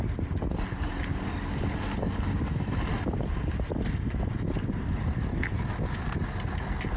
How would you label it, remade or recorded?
recorded